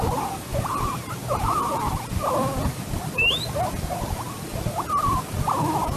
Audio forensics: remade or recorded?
recorded